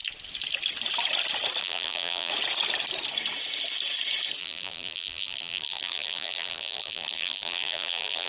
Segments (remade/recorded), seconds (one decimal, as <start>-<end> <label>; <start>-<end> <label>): 0.0-1.6 recorded; 1.6-2.3 remade; 2.3-4.4 recorded; 4.4-8.3 remade

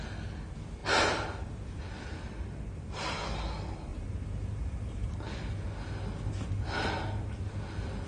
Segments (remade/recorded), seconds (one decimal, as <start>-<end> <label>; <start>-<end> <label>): 0.0-0.8 recorded; 0.8-1.8 remade; 1.8-3.9 recorded; 3.9-5.1 remade; 5.1-8.1 recorded

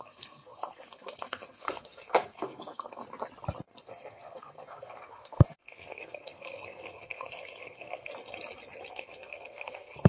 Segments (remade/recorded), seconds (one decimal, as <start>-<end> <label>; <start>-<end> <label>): 0.0-3.0 remade; 3.0-3.8 recorded; 3.8-8.1 remade; 8.1-8.9 recorded; 8.9-10.1 remade

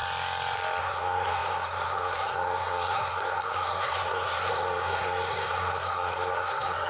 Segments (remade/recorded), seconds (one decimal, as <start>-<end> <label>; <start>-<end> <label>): 0.0-0.8 recorded; 0.8-6.9 remade

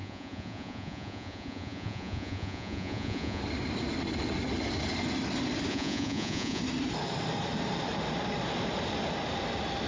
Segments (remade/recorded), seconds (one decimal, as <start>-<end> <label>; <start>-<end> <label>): 0.0-3.4 remade; 3.4-5.7 recorded; 5.7-6.6 remade; 6.6-9.9 recorded

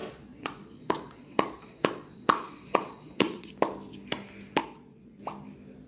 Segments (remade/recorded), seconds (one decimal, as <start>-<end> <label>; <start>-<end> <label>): 0.0-3.5 remade; 3.5-4.6 recorded; 4.6-5.2 remade; 5.2-5.9 recorded